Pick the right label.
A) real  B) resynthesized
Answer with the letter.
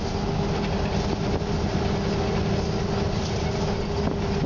A